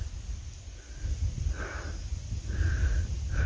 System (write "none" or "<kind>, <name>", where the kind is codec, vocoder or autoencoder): none